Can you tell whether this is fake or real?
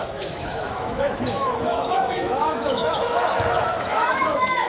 fake